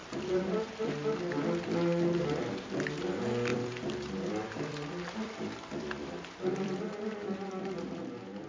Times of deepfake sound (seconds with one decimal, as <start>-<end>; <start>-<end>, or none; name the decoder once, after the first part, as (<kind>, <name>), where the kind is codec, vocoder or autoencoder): 0.0-0.9 (vocoder, BigVGAN v2); 3.5-6.8